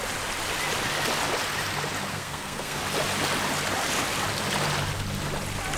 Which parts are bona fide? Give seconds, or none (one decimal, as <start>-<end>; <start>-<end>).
0.0-2.1; 2.8-5.8